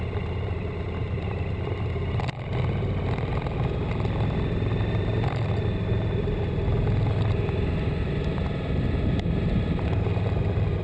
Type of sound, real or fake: real